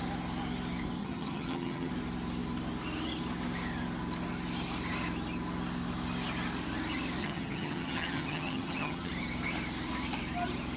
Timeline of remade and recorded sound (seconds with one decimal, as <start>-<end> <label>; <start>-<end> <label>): 0.0-1.0 recorded; 1.0-1.9 remade; 1.9-7.2 recorded; 7.2-9.1 remade; 9.1-10.8 recorded